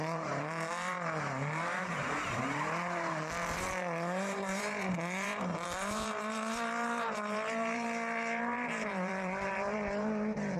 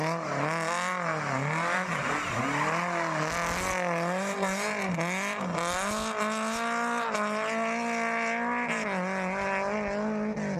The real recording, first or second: second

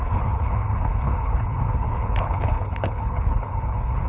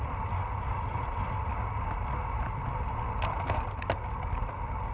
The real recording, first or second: second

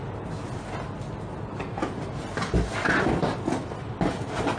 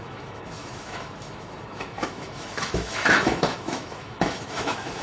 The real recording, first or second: first